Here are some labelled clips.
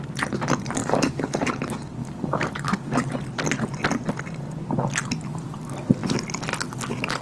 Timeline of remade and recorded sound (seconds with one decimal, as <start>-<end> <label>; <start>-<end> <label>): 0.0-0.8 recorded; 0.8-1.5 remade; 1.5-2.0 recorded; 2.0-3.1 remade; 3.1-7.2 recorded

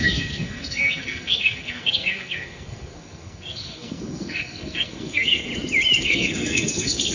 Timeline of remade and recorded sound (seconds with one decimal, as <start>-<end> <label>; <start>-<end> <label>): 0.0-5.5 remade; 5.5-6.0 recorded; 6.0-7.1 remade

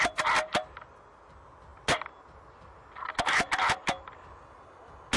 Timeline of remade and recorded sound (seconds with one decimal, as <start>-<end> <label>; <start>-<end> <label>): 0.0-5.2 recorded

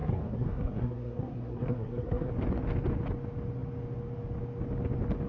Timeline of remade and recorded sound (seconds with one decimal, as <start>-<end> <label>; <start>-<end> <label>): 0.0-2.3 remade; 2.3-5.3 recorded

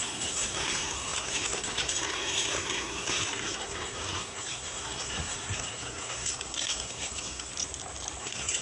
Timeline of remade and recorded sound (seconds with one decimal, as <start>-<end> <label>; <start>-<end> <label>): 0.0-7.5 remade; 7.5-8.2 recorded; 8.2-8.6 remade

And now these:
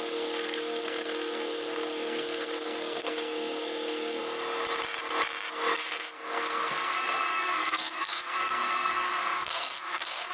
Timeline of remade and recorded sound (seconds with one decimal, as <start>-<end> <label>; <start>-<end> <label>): 0.0-4.2 remade; 4.2-5.5 recorded; 5.5-10.3 remade